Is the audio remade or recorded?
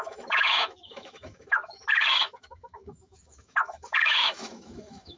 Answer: remade